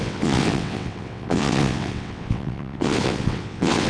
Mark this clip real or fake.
fake